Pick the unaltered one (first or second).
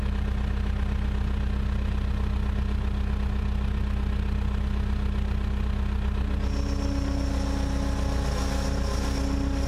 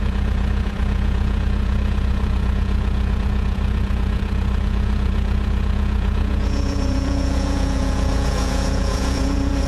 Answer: first